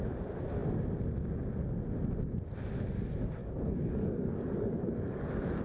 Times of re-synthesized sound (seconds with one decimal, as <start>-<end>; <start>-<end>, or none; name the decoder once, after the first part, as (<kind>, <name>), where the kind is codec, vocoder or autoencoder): 3.4-5.6 (codec, DAC)